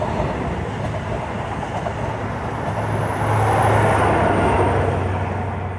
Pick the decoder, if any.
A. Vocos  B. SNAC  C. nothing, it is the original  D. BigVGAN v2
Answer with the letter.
C